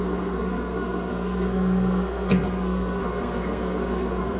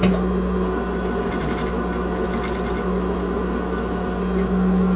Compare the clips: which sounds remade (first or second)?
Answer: first